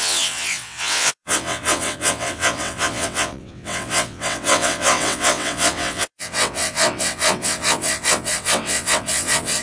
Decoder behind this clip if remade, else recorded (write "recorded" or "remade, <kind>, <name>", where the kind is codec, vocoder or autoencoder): remade, vocoder, WaveNeXt